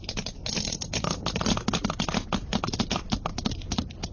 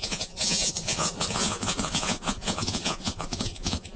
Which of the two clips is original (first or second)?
first